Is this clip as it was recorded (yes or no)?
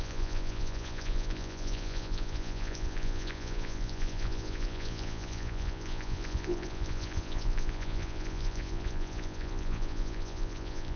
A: no